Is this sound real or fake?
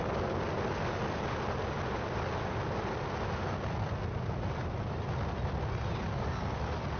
real